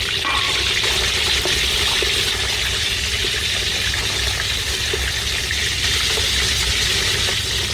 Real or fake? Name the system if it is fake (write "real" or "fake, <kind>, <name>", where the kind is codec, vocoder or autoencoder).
real